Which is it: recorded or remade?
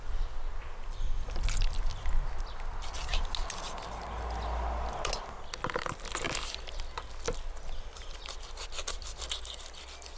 recorded